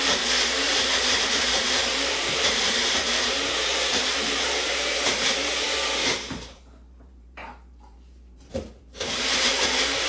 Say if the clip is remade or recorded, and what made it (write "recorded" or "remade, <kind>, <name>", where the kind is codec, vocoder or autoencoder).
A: remade, vocoder, BigVGAN v2